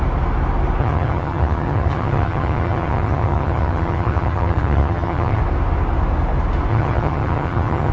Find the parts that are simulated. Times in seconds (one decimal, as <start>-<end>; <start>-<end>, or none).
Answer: 0.8-5.4; 6.7-7.9